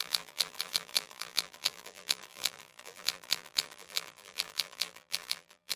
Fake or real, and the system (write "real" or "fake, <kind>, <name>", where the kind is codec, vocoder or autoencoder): fake, vocoder, BigVGAN v2